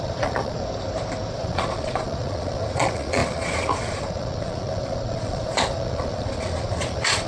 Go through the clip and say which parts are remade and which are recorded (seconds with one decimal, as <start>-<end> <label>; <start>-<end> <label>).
0.0-0.6 remade; 0.6-1.3 recorded; 1.3-7.3 remade